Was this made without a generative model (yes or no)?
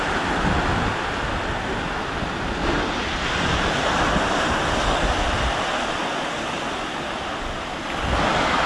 yes